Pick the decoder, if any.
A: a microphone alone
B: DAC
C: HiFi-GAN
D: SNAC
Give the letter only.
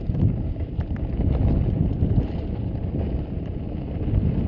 A